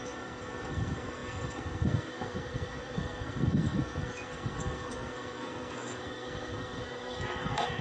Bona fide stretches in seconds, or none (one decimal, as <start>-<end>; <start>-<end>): none